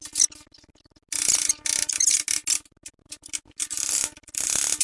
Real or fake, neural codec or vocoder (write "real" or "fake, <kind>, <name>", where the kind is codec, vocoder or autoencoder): real